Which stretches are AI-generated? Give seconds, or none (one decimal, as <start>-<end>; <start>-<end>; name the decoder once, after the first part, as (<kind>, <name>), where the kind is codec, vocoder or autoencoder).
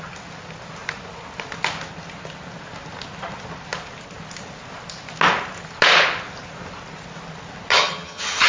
7.7-8.5 (vocoder, HiFi-GAN)